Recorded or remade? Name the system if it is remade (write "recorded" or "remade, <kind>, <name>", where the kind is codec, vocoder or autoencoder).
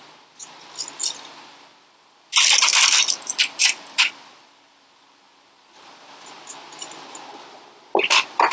recorded